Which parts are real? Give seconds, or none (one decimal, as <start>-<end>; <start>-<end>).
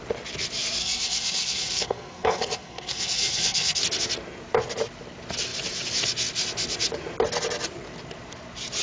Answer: 0.0-0.8; 3.8-8.8